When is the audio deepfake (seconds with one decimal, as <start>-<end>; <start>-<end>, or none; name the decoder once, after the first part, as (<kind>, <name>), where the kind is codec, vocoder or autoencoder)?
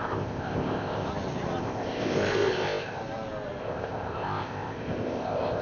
0.0-1.1 (codec, ZipCodec); 1.6-3.0; 3.6-5.6